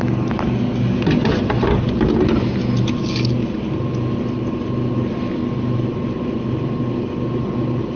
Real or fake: real